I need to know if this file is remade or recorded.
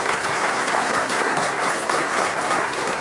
remade